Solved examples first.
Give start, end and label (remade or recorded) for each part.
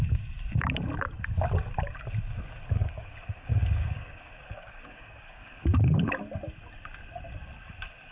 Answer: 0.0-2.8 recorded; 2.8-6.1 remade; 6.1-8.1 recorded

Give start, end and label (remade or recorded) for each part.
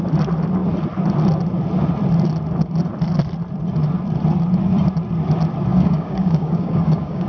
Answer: 0.0-5.7 recorded; 5.7-7.3 remade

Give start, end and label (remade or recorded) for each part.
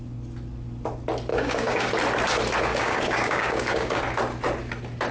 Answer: 0.0-1.3 recorded; 1.3-1.9 remade; 1.9-2.7 recorded; 2.7-4.0 remade; 4.0-5.1 recorded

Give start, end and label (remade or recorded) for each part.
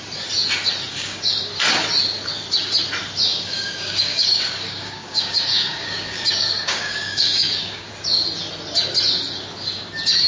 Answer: 0.0-0.9 recorded; 0.9-1.5 remade; 1.5-3.3 recorded; 3.3-7.9 remade; 7.9-10.3 recorded